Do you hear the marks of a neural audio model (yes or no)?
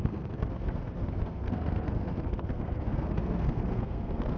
yes